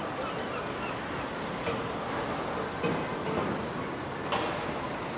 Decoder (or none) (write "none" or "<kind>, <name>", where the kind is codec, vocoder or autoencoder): none